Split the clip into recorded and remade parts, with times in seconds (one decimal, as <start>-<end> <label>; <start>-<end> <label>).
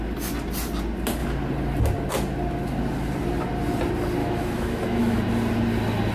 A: 0.0-4.2 recorded; 4.2-5.2 remade; 5.2-6.1 recorded